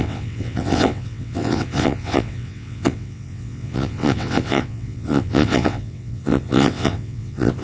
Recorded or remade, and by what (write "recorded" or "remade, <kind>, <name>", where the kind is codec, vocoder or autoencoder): remade, vocoder, WaveNeXt